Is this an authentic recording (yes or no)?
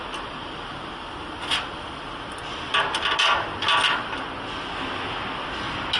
yes